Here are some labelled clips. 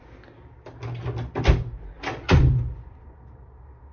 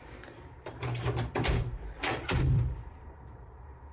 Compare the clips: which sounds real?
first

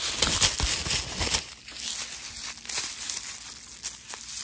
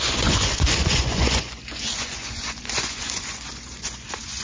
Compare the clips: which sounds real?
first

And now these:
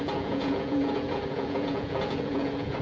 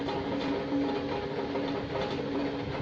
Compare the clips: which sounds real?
second